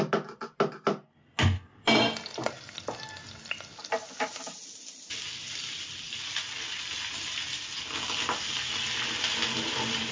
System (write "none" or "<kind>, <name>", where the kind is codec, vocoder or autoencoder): none